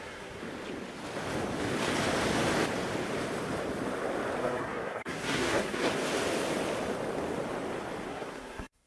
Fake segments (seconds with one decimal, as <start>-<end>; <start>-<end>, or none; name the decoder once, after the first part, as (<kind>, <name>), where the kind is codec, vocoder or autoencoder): 0.0-0.4 (codec, SNAC); 4.4-5.9; 8.1-8.9